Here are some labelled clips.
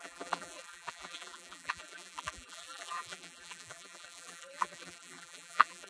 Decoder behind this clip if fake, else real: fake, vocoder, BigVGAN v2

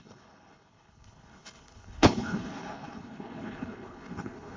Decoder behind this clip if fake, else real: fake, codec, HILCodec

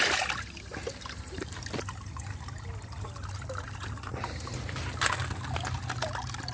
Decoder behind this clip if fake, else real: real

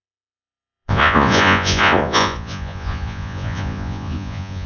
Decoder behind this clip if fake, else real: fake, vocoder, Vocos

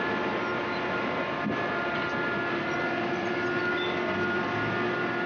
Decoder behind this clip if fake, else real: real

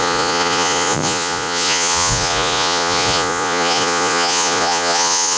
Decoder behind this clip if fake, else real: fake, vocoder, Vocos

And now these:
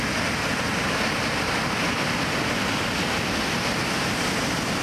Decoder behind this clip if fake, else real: real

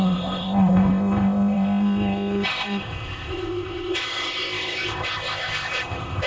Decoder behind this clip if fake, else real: fake, codec, ZipCodec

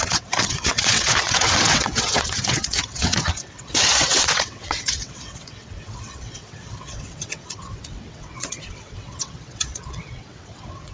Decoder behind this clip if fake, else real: fake, vocoder, WaveNeXt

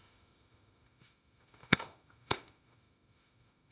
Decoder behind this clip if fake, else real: fake, autoencoder, DAC-VAE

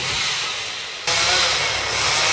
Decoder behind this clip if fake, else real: real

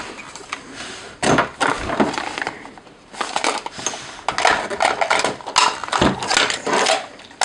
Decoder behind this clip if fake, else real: real